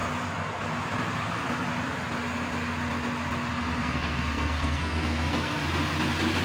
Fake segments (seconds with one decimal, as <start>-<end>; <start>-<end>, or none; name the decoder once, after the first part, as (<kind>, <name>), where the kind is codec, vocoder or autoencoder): 3.8-5.6 (codec, SNAC)